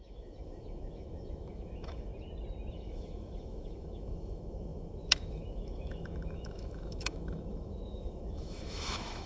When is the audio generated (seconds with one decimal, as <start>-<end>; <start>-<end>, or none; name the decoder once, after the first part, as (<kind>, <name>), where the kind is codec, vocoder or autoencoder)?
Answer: 0.0-2.1 (autoencoder, DAC-VAE); 2.7-9.3